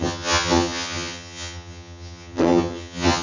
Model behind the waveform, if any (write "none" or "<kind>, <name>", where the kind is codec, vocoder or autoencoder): vocoder, HiFi-GAN